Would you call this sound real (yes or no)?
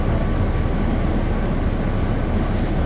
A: yes